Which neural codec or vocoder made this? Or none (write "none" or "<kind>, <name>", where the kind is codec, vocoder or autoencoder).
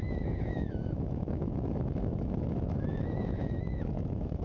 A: autoencoder, DAC-VAE